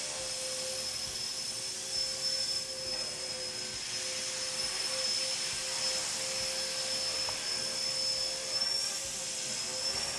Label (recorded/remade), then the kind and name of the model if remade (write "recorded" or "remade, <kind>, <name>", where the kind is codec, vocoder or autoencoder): recorded